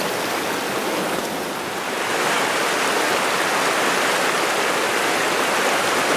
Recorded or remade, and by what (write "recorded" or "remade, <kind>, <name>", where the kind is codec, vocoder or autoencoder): recorded